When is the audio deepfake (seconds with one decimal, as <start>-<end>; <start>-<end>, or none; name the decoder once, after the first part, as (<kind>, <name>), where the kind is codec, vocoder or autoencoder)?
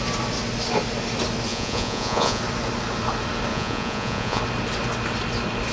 1.5-2.4 (vocoder, Vocos); 3.5-4.4